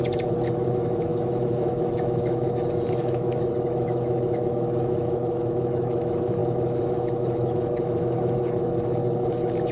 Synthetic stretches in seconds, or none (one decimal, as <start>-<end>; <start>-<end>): 0.0-9.7